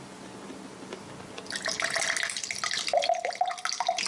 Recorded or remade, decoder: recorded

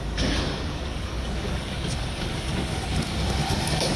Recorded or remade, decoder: remade, codec, DAC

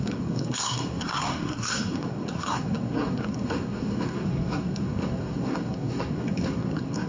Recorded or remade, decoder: remade, codec, SNAC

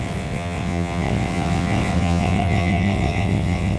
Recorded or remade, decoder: remade, vocoder, WaveNeXt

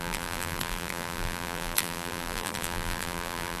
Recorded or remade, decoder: remade, vocoder, BigVGAN v2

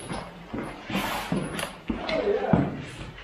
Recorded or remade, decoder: recorded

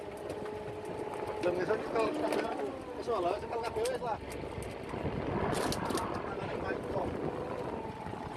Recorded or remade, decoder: recorded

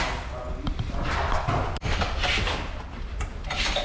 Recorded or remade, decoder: recorded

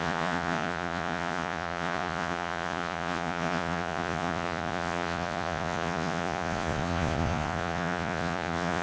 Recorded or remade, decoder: remade, vocoder, Vocos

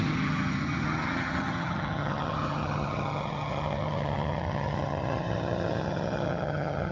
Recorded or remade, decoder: remade, vocoder, HiFi-GAN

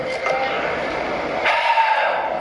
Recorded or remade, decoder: recorded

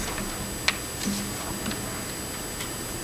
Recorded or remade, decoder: recorded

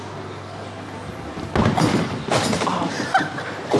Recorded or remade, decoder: recorded